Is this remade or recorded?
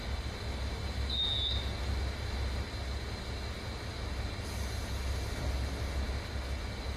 recorded